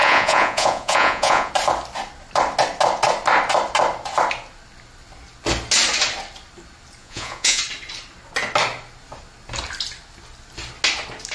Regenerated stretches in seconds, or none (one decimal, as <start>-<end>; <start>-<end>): 0.0-1.5; 7.0-7.6

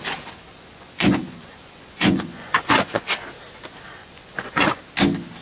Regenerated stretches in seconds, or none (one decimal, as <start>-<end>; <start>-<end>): 0.5-3.1; 4.0-4.8

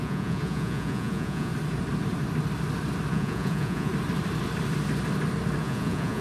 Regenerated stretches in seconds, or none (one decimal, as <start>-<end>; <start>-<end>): 0.0-1.5; 3.1-3.9; 5.6-6.2

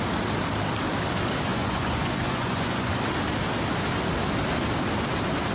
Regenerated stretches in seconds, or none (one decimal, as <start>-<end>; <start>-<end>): 1.5-2.9